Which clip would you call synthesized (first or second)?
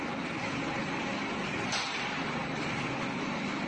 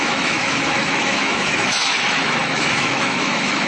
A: second